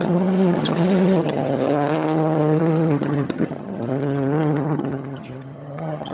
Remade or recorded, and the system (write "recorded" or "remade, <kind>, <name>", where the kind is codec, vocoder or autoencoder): remade, vocoder, HiFi-GAN